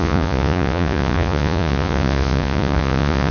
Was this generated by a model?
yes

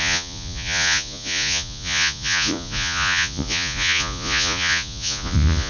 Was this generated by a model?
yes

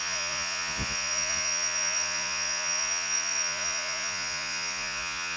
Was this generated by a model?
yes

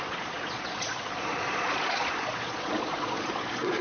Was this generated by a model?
yes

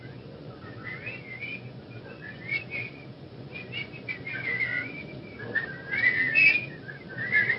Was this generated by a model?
yes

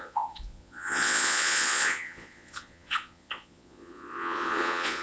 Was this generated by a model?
yes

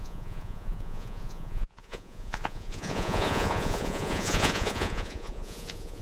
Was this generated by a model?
yes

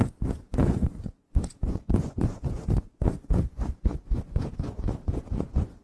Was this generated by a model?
yes